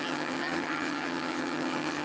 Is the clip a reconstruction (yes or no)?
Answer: yes